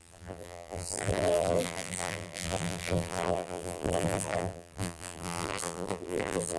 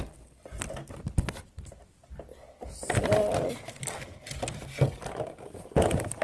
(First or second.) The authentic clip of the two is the second